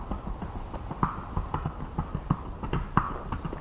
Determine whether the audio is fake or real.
real